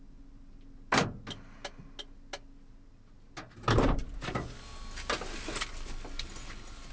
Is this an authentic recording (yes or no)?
yes